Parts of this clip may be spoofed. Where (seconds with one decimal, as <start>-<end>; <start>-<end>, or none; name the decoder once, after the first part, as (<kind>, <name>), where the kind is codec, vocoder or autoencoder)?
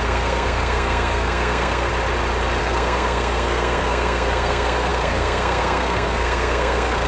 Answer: 0.0-1.9 (codec, SNAC); 2.6-7.1